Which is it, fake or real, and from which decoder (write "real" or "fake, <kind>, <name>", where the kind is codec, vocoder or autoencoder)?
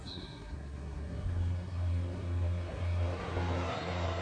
fake, codec, SNAC